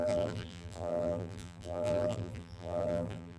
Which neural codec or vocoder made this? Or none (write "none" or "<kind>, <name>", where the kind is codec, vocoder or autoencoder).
vocoder, BigVGAN v2